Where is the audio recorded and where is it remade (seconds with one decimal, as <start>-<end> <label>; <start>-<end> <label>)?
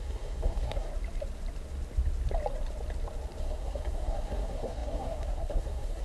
0.0-0.9 remade; 0.9-3.4 recorded; 3.4-6.0 remade